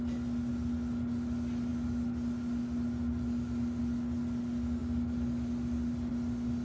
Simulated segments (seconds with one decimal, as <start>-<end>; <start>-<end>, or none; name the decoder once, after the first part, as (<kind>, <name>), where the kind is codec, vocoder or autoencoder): none